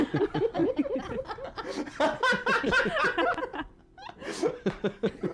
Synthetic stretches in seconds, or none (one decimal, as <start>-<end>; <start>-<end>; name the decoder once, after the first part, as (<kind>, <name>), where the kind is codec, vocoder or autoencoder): none